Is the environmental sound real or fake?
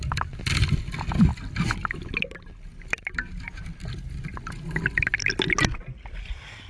real